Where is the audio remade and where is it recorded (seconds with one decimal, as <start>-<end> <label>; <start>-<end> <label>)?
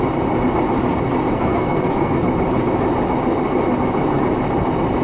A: 0.0-1.3 recorded; 1.3-2.2 remade; 2.2-5.0 recorded